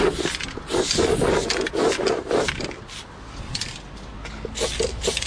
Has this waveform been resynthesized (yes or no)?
no